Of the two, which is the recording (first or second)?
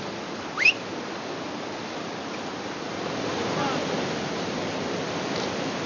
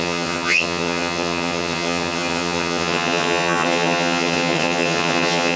first